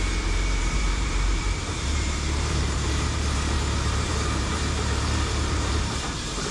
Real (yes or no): no